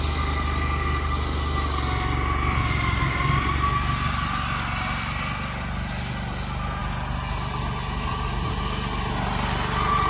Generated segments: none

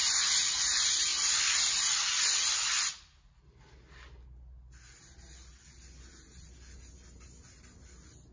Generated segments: none

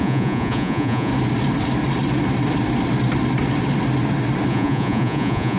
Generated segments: 0.0-1.1 (vocoder, Vocos); 4.5-5.6

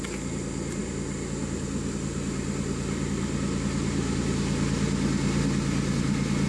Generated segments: none

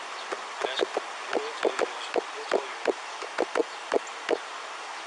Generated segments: none